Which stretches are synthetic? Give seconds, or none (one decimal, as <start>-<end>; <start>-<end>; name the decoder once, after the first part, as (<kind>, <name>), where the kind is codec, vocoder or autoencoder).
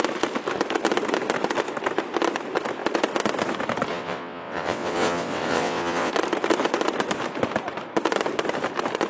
3.9-6.1 (vocoder, WaveNeXt)